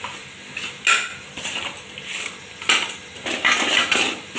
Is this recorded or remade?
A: recorded